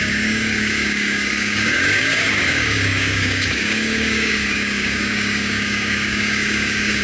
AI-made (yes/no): yes